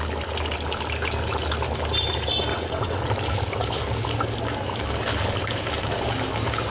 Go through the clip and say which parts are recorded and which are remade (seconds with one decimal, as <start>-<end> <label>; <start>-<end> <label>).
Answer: 0.0-2.5 recorded; 2.5-3.0 remade; 3.0-6.7 recorded